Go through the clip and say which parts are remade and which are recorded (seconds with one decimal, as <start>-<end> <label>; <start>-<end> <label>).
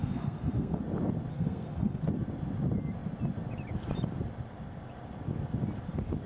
0.0-0.8 remade; 0.8-1.3 recorded; 1.3-2.0 remade; 2.0-6.3 recorded